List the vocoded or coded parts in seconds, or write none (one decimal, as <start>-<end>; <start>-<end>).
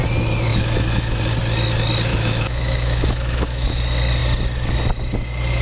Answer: 0.5-1.2; 2.1-3.8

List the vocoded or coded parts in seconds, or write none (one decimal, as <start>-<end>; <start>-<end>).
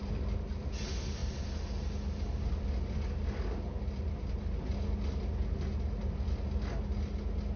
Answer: none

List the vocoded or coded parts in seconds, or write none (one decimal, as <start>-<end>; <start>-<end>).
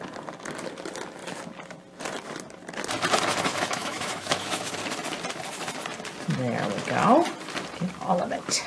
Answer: 3.5-4.8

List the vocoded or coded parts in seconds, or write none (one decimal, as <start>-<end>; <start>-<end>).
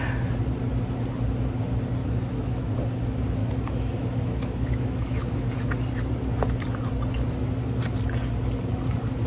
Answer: 2.0-2.7; 3.4-5.7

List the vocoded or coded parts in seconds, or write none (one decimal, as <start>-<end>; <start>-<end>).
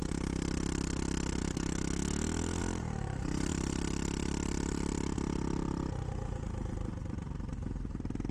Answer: 1.4-2.6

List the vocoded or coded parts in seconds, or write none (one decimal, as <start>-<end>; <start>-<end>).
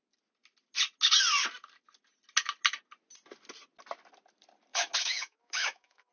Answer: 4.7-6.1